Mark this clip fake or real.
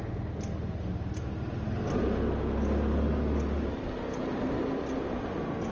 real